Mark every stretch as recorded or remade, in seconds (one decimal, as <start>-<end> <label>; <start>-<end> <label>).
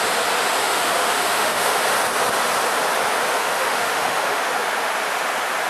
0.0-0.6 recorded; 0.6-1.8 remade; 1.8-3.4 recorded; 3.4-4.4 remade; 4.4-5.7 recorded